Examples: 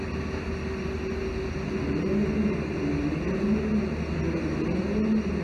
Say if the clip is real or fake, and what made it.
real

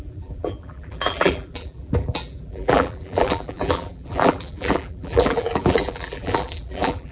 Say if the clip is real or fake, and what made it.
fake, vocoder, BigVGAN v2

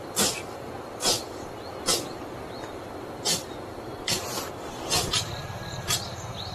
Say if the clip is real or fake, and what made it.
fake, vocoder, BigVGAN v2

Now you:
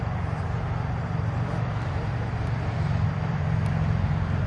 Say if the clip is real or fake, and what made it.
fake, vocoder, BigVGAN v2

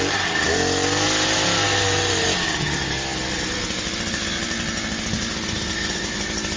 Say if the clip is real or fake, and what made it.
real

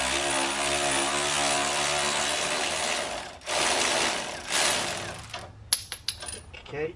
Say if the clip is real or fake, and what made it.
real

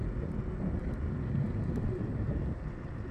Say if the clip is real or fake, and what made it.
real